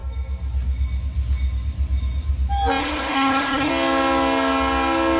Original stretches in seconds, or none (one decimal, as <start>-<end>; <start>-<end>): 0.0-2.8; 3.7-5.2